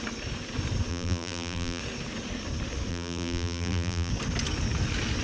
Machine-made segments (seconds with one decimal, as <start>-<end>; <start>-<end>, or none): 0.9-1.8; 2.9-4.1